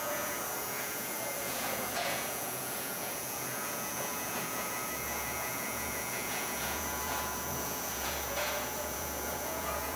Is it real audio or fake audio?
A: fake